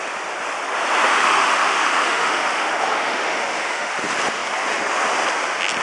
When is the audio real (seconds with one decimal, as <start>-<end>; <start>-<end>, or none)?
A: 0.0-1.1; 3.9-5.8